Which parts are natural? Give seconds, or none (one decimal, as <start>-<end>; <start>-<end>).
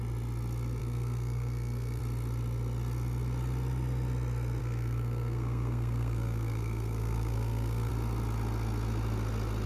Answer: 0.0-0.8; 2.0-4.6; 7.9-9.7